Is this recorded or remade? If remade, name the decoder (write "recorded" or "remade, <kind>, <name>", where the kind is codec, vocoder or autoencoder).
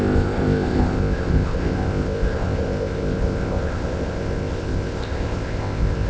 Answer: remade, codec, ZipCodec